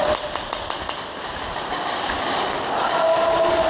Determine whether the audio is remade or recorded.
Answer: recorded